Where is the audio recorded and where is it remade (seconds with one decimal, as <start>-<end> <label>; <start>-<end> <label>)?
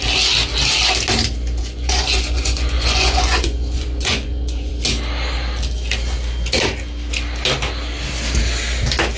0.0-1.6 recorded; 1.6-4.7 remade; 4.7-9.2 recorded